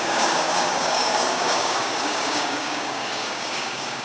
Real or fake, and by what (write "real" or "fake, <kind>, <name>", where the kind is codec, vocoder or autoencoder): fake, codec, DAC